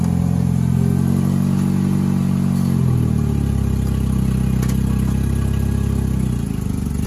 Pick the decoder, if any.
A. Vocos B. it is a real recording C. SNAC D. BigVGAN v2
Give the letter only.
B